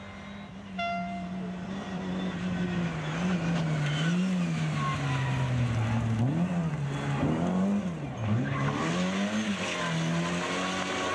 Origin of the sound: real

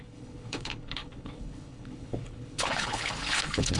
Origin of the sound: fake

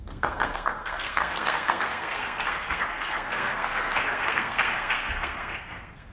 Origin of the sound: fake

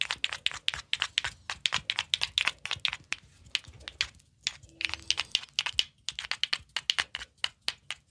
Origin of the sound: real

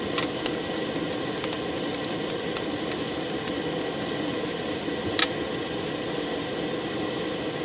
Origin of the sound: real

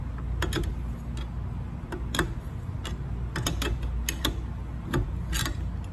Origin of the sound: real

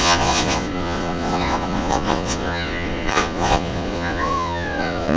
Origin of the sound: fake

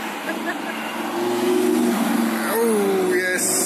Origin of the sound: real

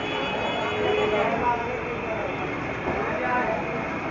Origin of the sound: real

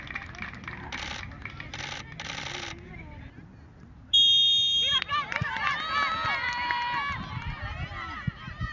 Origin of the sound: real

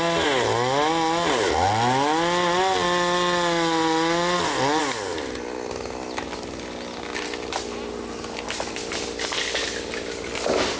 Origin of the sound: real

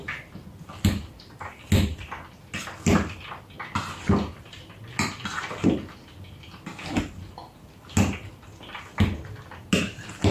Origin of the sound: real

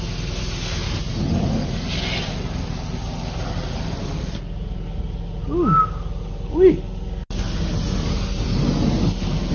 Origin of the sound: real